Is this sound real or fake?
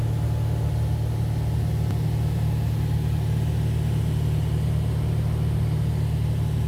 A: real